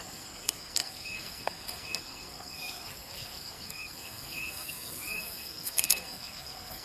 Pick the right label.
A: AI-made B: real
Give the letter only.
A